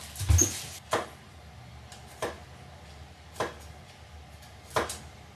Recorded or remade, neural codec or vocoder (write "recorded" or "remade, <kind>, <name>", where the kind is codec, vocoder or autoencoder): recorded